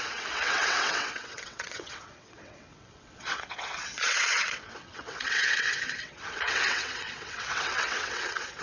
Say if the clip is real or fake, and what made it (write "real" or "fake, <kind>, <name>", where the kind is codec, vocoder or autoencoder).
fake, vocoder, WaveNeXt